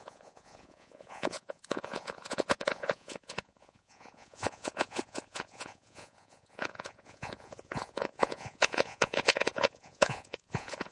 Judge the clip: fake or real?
fake